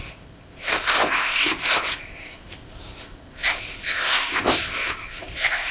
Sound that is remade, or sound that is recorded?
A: remade